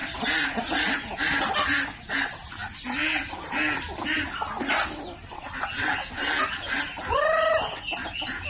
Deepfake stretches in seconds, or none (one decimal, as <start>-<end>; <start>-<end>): none